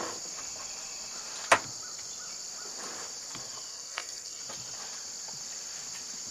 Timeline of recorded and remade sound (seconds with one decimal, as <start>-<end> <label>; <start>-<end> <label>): 0.0-3.7 recorded; 3.7-4.4 remade; 4.4-6.3 recorded